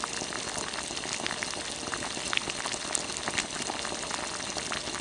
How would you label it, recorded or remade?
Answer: recorded